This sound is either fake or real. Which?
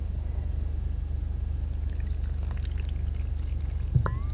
real